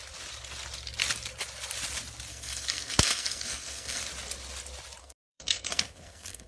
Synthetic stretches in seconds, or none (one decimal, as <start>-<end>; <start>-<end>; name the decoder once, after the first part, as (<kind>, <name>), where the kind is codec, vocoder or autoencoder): 2.3-4.0 (codec, SNAC); 5.0-6.5